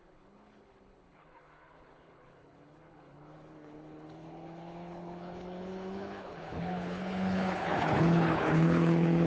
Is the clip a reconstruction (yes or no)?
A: yes